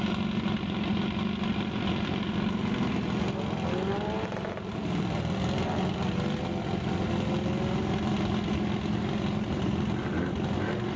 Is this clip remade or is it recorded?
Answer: recorded